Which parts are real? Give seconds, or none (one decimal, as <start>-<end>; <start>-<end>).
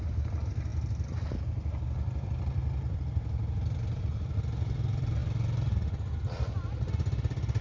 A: 0.0-7.6